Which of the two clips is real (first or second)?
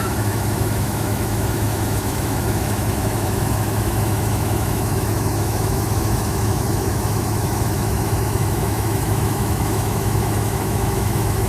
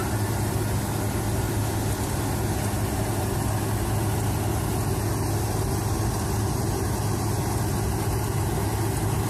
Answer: second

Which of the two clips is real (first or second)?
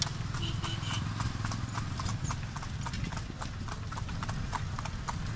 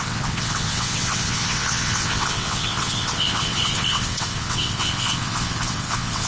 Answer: first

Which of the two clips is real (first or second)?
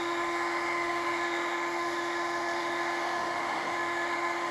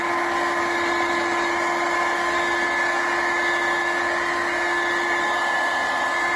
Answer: second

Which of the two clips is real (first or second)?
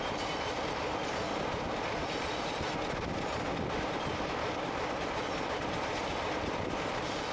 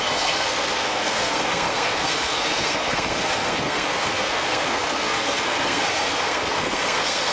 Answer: first